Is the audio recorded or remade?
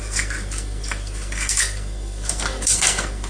remade